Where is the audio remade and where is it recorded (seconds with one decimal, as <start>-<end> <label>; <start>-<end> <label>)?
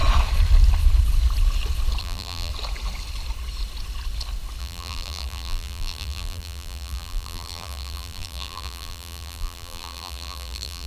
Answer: 0.0-2.0 recorded; 2.0-2.5 remade; 2.5-4.6 recorded; 4.6-10.9 remade